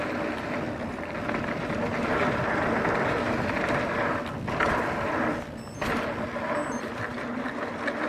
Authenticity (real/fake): real